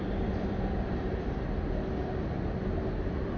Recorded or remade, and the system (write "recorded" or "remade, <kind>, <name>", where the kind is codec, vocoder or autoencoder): recorded